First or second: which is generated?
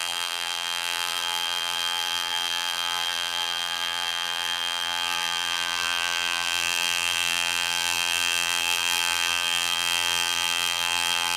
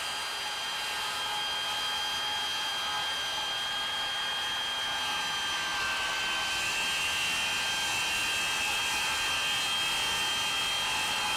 first